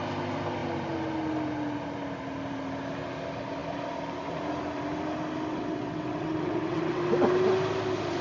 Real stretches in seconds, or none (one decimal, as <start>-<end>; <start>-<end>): 0.0-5.5; 7.0-8.2